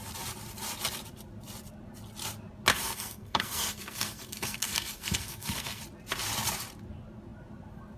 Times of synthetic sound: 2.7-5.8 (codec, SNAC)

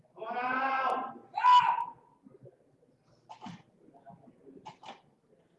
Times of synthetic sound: none

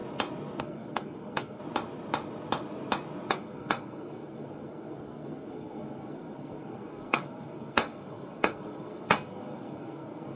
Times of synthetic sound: 0.6-1.6 (codec, SNAC); 3.3-10.4

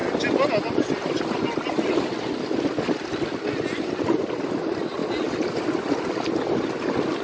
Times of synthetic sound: none

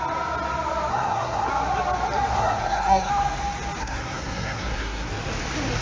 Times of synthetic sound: 0.9-1.5 (codec, SNAC); 2.3-3.1; 3.8-5.1

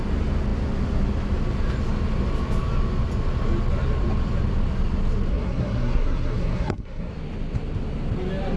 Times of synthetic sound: 5.3-7.1 (codec, SNAC)

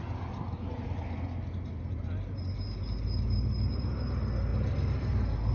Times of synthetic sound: none